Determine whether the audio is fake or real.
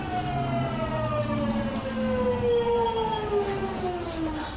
real